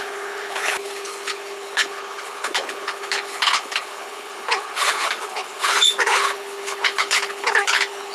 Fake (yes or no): yes